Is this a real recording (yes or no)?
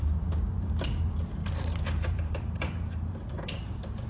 no